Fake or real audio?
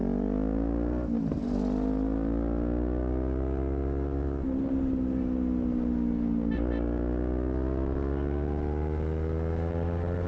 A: real